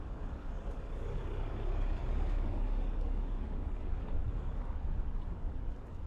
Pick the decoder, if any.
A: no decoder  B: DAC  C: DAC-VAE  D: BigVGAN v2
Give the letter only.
B